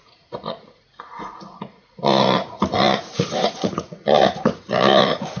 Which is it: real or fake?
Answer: fake